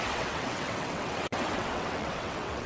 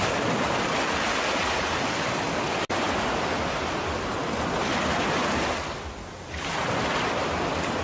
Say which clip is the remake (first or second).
first